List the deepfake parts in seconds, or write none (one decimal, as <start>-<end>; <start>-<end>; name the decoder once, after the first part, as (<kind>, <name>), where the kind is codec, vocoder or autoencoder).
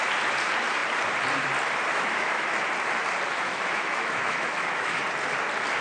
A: 1.9-2.5 (autoencoder, DAC-VAE); 3.3-5.0